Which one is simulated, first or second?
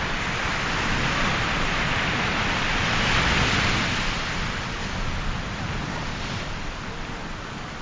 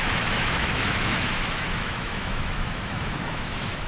second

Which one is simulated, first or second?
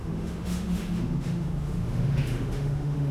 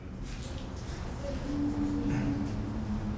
first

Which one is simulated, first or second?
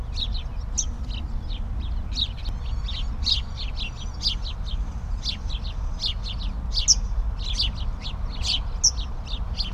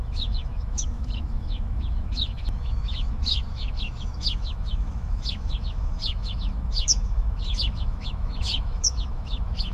second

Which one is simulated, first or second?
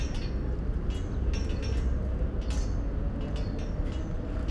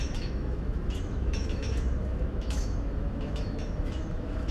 second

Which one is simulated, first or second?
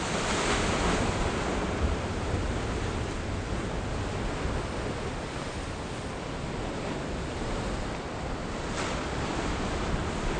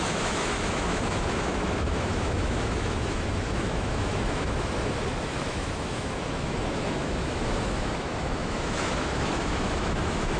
second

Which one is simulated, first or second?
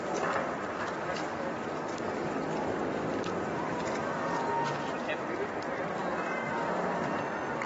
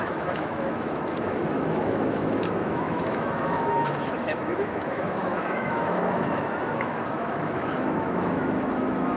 second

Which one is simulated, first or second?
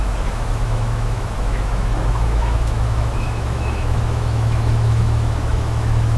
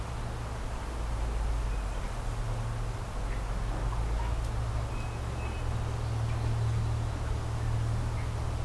first